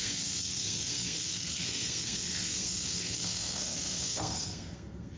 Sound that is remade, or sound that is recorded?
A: remade